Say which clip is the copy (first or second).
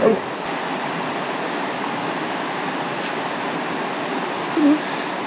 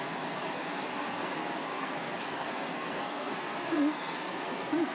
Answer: second